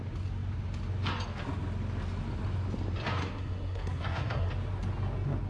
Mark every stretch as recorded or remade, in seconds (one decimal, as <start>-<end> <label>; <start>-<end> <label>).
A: 0.0-3.2 recorded; 3.2-4.5 remade; 4.5-5.5 recorded